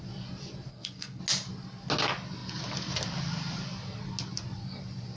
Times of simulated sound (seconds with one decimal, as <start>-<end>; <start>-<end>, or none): 0.7-1.2